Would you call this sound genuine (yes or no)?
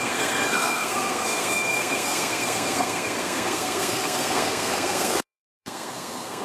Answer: no